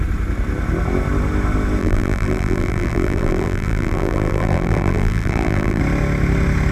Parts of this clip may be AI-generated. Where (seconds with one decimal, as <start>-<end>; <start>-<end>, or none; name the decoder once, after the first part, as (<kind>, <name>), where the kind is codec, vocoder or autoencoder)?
1.8-5.8 (vocoder, BigVGAN v2)